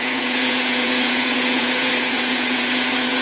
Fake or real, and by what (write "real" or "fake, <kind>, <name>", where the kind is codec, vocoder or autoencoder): fake, vocoder, Vocos